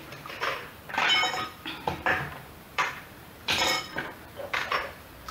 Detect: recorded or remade remade